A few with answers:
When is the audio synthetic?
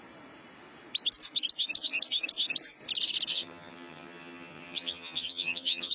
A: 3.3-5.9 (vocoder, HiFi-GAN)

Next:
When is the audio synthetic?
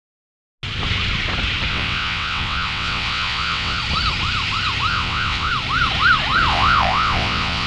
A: 1.7-3.8 (vocoder, WaveNeXt); 4.9-5.5; 6.5-7.7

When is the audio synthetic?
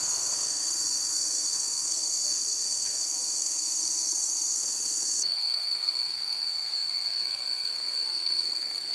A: 0.0-8.9 (codec, SNAC)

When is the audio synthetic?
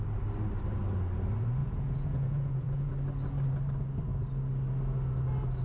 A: 1.6-2.9 (vocoder, Vocos)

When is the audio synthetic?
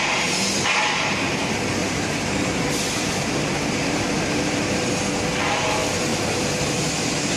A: 1.8-4.7 (vocoder, BigVGAN v2); 6.1-6.8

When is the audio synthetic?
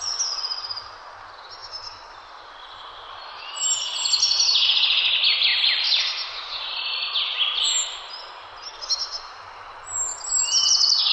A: 5.5-6.0 (vocoder, BigVGAN v2)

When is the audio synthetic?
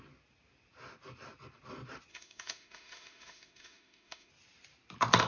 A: 2.1-4.3 (autoencoder, DAC-VAE)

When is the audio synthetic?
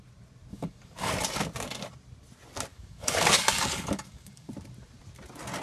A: 0.5-1.1 (codec, DAC); 2.7-4.5